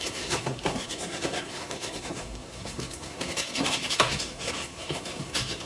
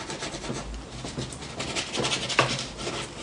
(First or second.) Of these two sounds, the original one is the second